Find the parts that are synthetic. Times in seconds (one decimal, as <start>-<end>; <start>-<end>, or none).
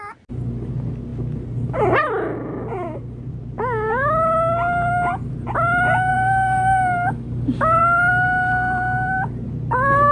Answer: 6.1-7.8